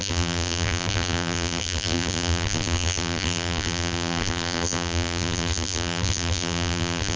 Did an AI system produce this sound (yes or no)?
yes